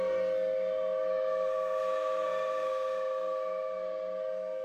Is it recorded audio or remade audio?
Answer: remade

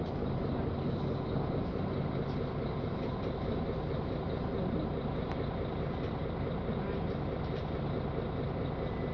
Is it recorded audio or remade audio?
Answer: recorded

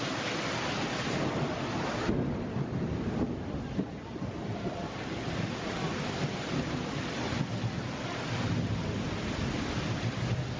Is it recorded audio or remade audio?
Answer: recorded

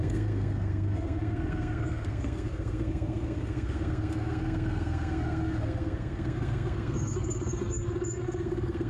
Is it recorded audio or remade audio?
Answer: remade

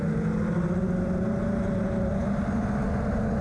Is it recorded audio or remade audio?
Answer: recorded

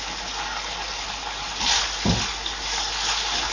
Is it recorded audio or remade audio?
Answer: recorded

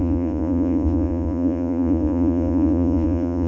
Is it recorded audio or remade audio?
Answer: remade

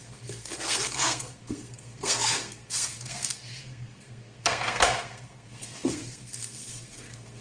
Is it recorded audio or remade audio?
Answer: remade